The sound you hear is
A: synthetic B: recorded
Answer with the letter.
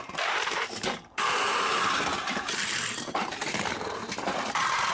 A